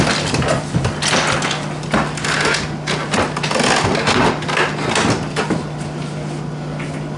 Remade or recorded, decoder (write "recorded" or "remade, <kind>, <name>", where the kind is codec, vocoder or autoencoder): recorded